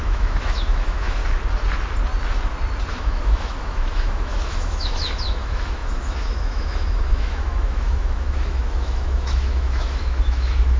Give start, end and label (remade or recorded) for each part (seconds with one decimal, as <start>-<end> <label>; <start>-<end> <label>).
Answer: 0.0-1.2 remade; 1.2-2.9 recorded; 2.9-10.8 remade